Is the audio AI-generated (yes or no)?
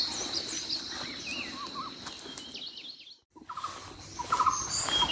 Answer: no